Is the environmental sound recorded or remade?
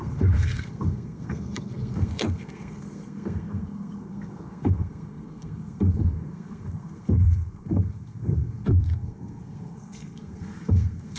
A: remade